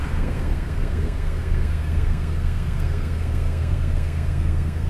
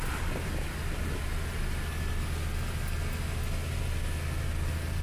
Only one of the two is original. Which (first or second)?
second